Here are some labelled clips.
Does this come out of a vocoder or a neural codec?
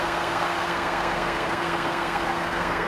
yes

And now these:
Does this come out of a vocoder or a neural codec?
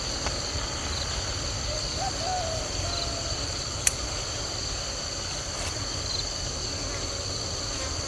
no